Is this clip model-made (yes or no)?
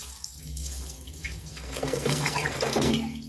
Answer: yes